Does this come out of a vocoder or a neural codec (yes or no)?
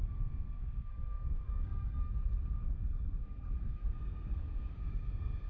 yes